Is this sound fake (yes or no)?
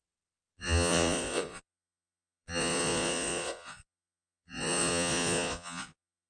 yes